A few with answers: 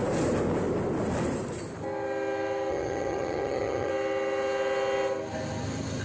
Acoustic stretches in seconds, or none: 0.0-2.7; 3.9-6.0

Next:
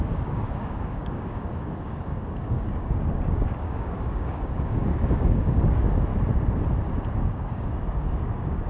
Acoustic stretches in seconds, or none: 6.1-7.2

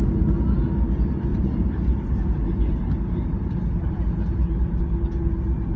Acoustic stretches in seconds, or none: 0.0-1.3; 4.8-5.8

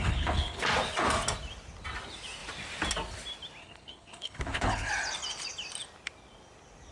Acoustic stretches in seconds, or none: 0.6-3.6; 4.9-6.9

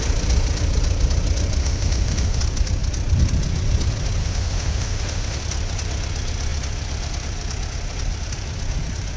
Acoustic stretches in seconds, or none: 0.0-1.6; 2.4-4.2; 5.4-9.2

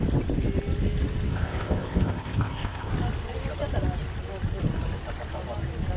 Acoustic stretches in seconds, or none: 0.0-1.3; 2.9-6.0